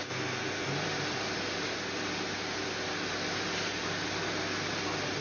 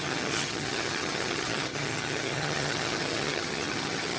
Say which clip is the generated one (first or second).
second